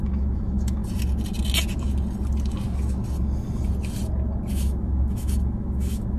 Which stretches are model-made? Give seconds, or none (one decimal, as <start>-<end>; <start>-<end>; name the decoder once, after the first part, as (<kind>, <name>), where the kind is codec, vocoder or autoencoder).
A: 0.0-0.8 (autoencoder, DAC-VAE); 4.5-6.2